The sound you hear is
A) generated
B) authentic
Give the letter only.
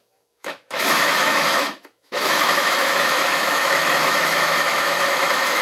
A